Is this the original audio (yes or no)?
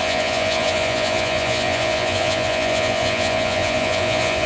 no